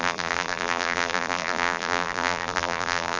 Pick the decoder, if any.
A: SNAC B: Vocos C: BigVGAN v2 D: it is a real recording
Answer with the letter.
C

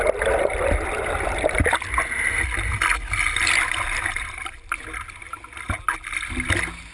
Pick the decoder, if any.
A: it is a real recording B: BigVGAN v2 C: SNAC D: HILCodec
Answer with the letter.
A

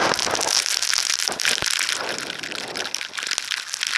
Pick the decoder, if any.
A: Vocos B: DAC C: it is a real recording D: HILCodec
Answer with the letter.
C